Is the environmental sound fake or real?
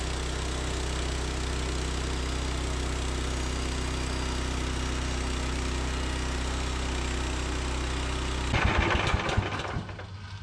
real